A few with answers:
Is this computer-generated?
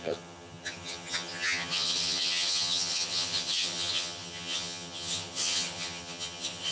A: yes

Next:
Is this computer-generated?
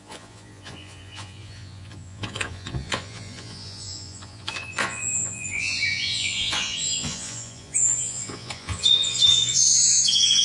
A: yes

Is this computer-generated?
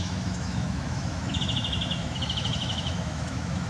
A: yes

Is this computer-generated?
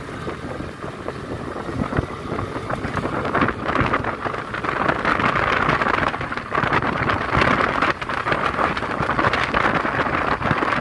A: no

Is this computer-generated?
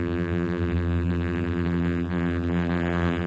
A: yes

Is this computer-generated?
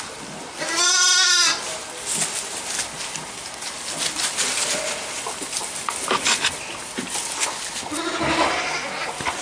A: no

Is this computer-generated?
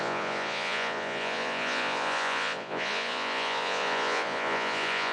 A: yes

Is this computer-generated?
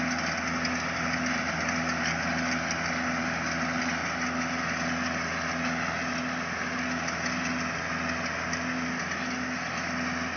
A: no